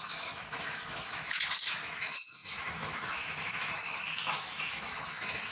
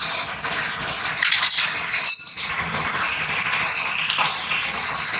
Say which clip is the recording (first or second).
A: second